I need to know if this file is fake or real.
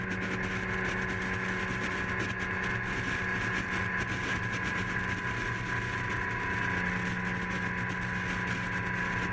real